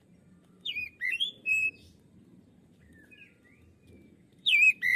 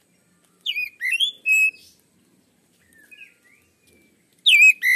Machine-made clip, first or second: first